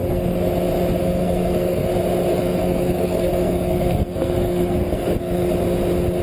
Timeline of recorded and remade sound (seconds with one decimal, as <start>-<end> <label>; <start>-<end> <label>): 0.0-0.5 remade; 0.5-1.0 recorded; 1.0-1.9 remade; 1.9-2.3 recorded; 2.3-5.5 remade; 5.5-6.2 recorded